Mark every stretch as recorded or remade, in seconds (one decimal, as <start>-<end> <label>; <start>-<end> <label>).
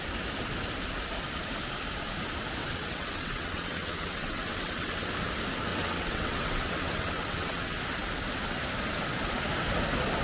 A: 0.0-2.6 recorded; 2.6-5.1 remade; 5.1-5.7 recorded; 5.7-7.8 remade; 7.8-10.2 recorded